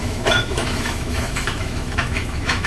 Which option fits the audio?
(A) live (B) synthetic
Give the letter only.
B